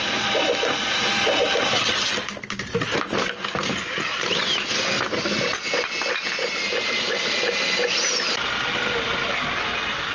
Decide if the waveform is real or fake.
real